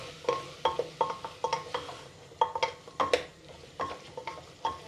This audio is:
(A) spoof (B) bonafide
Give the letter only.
B